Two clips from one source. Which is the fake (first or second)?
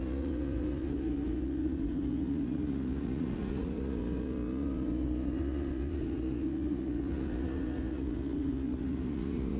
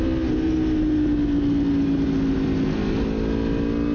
first